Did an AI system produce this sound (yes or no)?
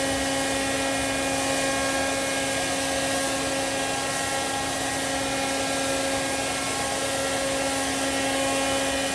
no